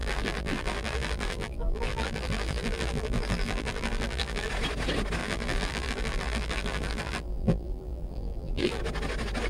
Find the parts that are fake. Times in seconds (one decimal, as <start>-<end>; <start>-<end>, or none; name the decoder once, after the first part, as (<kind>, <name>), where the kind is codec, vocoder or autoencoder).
0.0-4.5 (vocoder, BigVGAN v2); 5.2-8.8